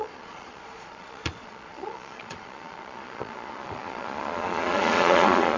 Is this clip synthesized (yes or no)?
yes